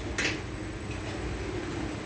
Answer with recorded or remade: recorded